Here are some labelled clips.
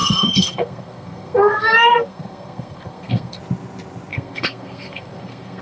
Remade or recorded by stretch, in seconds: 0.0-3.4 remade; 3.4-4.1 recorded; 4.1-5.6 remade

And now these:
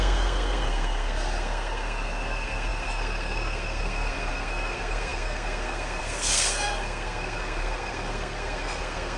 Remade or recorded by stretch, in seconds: 0.0-9.2 remade

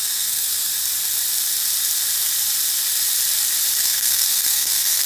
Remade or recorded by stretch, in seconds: 0.0-0.7 remade; 0.7-3.8 recorded; 3.8-5.1 remade